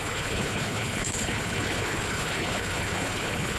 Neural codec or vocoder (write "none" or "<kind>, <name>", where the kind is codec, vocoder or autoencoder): codec, HILCodec